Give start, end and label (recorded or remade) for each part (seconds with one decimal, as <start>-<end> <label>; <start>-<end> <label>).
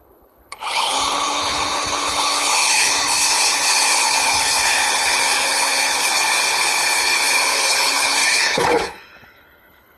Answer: 0.0-10.0 remade